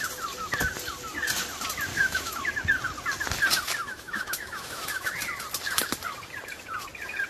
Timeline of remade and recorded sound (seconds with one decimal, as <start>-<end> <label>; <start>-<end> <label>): 0.0-1.9 recorded; 1.9-2.5 remade; 2.5-3.8 recorded; 3.8-5.1 remade; 5.1-7.3 recorded